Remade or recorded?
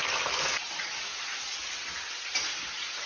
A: recorded